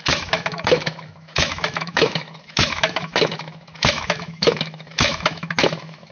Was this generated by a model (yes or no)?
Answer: yes